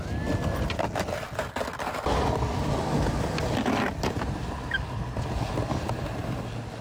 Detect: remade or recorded recorded